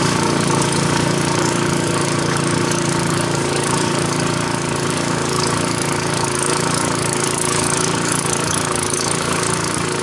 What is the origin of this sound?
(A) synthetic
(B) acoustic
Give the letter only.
A